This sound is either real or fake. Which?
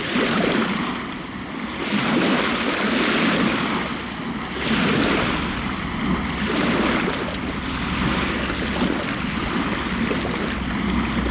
real